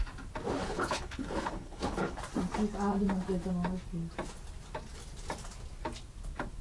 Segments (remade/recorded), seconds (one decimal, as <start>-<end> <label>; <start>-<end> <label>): 0.0-0.6 recorded; 0.6-2.2 remade; 2.2-6.6 recorded